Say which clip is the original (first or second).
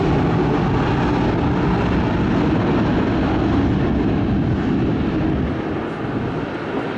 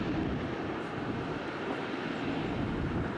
first